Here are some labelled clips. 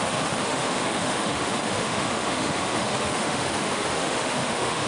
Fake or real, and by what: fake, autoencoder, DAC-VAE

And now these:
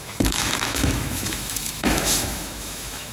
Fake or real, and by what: fake, autoencoder, DAC-VAE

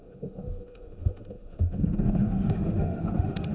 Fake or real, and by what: fake, autoencoder, DAC-VAE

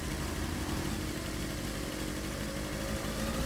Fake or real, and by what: real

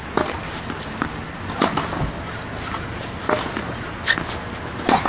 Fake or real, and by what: real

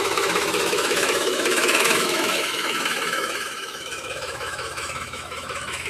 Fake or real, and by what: fake, autoencoder, DAC-VAE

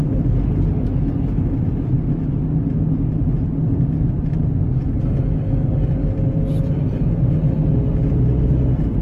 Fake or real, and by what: real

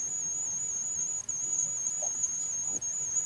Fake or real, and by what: real